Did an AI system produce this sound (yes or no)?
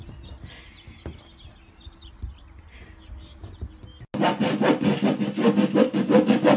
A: no